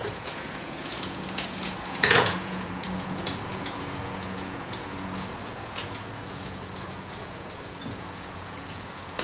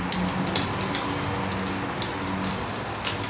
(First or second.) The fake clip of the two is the first